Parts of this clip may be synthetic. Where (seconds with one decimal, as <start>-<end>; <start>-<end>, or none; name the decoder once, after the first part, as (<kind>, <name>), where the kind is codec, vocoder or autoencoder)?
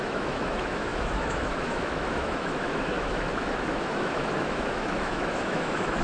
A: 0.0-6.0 (autoencoder, DAC-VAE)